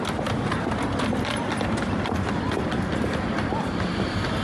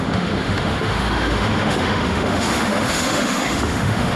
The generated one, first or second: second